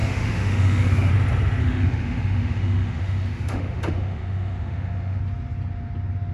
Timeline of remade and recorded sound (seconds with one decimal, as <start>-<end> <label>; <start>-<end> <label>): 0.0-1.1 remade; 1.1-1.6 recorded; 1.6-5.2 remade; 5.2-6.3 recorded